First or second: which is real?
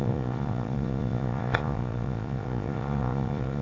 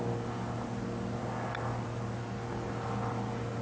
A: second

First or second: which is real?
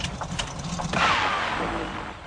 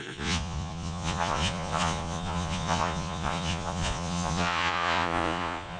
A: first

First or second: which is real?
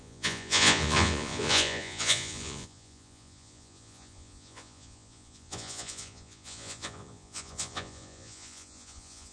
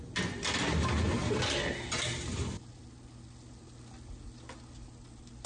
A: second